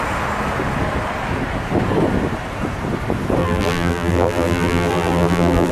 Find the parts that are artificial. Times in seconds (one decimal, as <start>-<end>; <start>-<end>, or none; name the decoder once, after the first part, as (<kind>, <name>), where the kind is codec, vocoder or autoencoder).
3.4-5.7 (vocoder, BigVGAN v2)